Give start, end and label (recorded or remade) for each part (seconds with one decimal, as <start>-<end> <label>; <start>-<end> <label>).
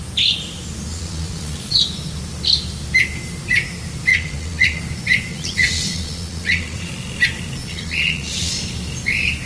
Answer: 0.0-0.9 recorded; 0.9-1.8 remade; 1.8-4.1 recorded; 4.1-4.8 remade; 4.8-5.3 recorded; 5.3-6.9 remade; 6.9-7.6 recorded; 7.6-8.5 remade; 8.5-9.5 recorded